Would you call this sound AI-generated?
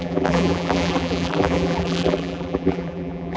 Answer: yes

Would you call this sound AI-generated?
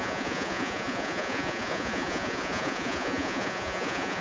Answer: yes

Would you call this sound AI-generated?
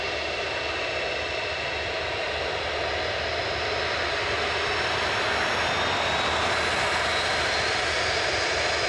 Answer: no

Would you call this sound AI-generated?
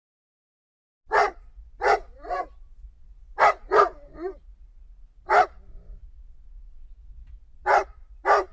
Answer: no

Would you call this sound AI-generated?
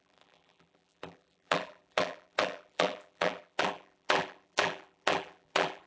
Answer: yes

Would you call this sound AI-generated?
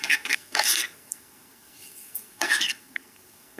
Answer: yes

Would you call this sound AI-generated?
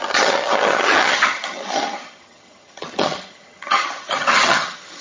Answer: yes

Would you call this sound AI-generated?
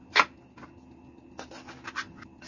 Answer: no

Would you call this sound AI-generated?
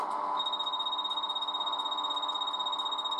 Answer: no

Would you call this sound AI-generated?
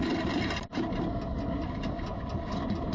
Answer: no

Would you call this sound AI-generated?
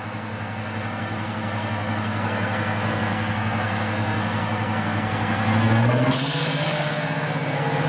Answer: yes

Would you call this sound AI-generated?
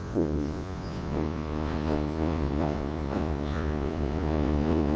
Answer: yes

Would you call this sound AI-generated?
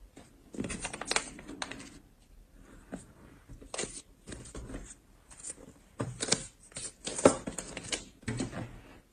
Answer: no